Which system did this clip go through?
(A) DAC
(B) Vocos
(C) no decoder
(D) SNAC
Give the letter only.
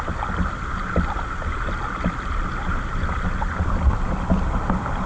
C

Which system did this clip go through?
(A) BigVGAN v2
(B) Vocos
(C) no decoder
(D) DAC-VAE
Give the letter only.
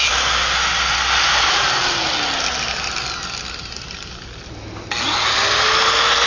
C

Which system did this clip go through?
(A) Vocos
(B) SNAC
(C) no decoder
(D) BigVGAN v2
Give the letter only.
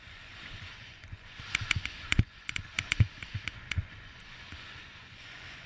A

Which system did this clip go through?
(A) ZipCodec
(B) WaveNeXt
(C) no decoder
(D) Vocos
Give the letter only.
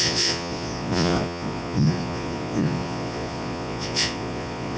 D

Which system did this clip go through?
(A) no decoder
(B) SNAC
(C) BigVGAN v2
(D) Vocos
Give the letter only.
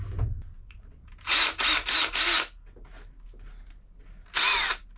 A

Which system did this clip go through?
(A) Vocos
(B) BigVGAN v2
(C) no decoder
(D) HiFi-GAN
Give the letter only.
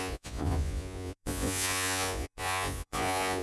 A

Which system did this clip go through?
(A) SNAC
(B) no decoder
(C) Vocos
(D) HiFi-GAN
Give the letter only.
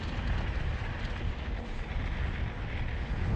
B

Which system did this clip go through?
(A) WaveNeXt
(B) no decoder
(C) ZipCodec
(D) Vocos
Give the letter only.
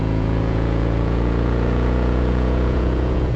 D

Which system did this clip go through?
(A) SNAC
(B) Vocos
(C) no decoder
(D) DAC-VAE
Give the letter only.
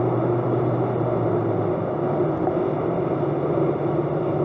C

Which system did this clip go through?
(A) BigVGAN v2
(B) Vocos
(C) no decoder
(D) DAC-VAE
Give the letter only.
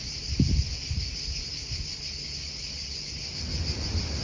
C